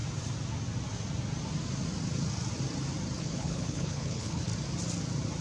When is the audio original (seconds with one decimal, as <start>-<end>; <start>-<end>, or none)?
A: 0.0-3.2; 4.5-5.4